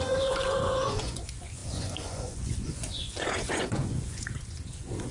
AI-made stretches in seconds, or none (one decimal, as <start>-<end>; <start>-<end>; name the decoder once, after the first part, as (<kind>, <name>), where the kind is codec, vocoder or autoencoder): 0.0-5.1 (vocoder, Vocos)